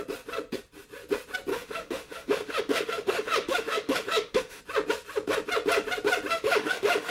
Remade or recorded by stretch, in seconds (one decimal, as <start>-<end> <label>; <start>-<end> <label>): 0.0-1.5 recorded; 1.5-4.6 remade; 4.6-6.3 recorded; 6.3-7.1 remade